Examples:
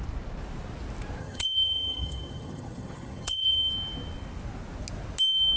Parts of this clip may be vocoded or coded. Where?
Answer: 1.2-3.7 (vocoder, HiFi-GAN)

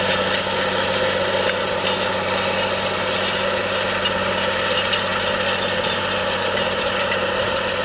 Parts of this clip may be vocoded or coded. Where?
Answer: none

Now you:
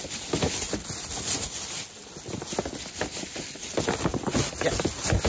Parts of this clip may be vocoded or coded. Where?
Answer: none

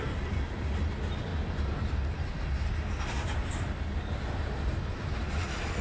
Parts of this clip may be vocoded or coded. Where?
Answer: 1.3-4.0 (vocoder, BigVGAN v2)

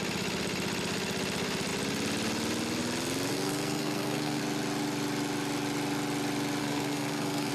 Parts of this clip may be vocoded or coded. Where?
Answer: 3.3-4.4 (codec, SNAC); 6.6-7.5